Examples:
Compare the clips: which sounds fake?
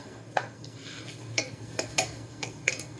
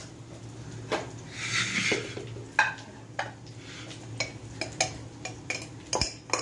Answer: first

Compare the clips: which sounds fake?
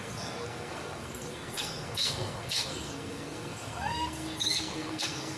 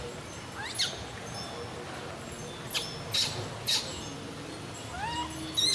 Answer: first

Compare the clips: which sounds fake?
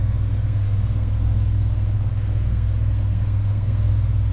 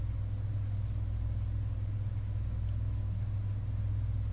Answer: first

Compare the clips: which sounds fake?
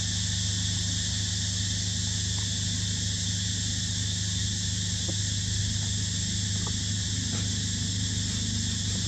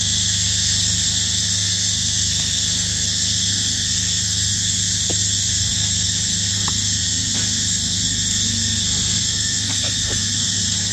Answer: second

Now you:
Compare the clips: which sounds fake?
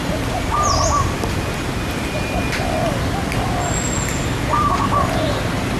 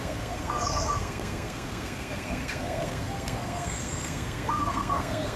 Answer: second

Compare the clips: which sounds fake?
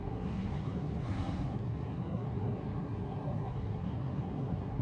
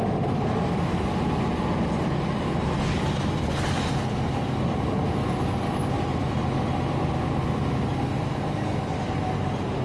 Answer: first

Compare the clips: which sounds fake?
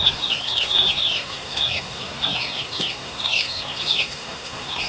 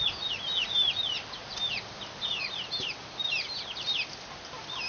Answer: first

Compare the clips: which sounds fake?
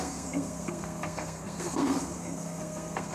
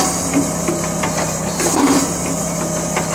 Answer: first